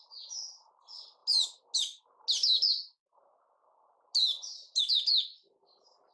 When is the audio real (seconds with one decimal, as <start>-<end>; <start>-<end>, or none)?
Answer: 0.0-6.1